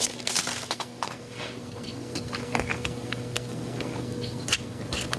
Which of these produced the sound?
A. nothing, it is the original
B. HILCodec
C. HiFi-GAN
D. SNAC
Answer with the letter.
D